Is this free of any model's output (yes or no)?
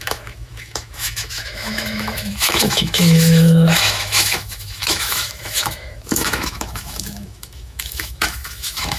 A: no